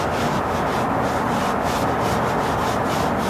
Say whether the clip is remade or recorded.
recorded